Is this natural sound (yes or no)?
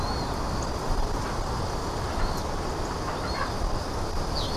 yes